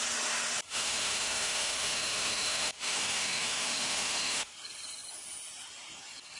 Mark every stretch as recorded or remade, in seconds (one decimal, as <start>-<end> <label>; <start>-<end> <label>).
0.0-0.7 recorded; 0.7-4.5 remade; 4.5-6.4 recorded